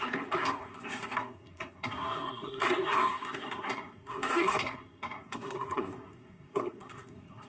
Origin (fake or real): fake